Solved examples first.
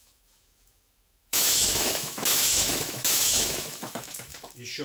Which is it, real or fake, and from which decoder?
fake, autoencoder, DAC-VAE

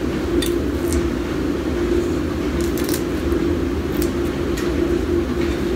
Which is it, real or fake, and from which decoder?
real